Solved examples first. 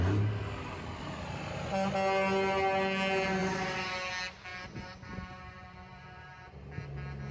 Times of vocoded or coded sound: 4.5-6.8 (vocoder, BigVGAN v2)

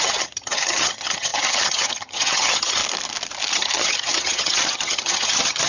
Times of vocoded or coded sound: 0.0-2.8 (vocoder, HiFi-GAN); 3.5-5.7

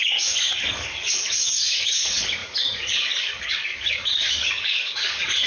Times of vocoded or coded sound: 0.0-5.5 (codec, DAC)

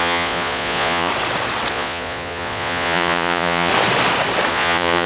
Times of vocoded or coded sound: 0.0-1.1 (vocoder, Vocos); 1.7-3.7; 4.5-5.1

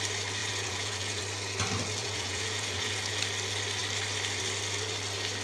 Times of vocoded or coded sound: 0.4-1.2 (vocoder, Vocos); 2.0-3.2